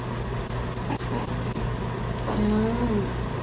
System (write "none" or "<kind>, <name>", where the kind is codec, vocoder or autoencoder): none